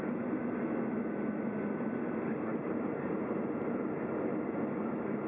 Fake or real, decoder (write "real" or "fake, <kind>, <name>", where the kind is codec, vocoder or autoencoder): real